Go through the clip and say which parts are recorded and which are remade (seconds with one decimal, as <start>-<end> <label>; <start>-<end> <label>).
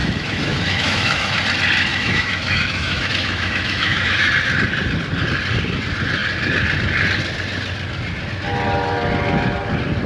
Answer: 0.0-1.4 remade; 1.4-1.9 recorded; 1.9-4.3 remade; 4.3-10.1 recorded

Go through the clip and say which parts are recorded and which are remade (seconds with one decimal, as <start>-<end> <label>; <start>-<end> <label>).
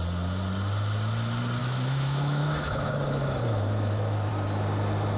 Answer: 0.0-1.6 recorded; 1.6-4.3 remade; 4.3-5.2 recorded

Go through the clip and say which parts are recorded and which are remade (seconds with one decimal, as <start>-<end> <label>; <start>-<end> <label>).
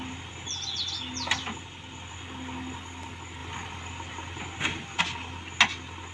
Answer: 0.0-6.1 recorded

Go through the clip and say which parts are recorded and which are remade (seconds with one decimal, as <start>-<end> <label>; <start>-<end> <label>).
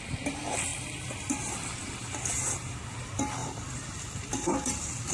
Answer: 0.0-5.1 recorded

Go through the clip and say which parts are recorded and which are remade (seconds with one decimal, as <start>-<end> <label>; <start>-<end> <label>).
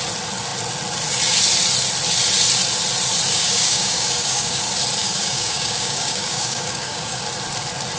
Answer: 0.0-3.3 recorded; 3.3-4.6 remade; 4.6-5.0 recorded; 5.0-7.2 remade; 7.2-8.0 recorded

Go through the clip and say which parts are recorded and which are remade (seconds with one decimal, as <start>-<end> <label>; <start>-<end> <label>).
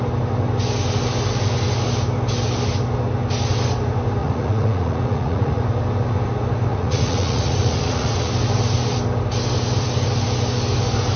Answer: 0.0-4.2 recorded; 4.2-5.6 remade; 5.6-6.7 recorded; 6.7-8.3 remade; 8.3-11.2 recorded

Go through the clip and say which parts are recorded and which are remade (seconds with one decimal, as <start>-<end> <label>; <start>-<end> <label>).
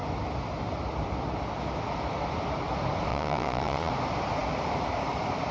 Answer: 0.0-3.1 recorded; 3.1-3.9 remade; 3.9-5.5 recorded